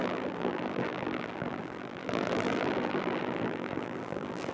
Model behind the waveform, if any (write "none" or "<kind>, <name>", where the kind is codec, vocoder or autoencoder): vocoder, BigVGAN v2